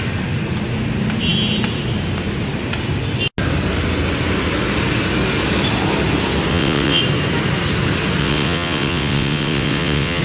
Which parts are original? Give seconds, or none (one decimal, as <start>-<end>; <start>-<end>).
0.0-6.5; 7.0-8.2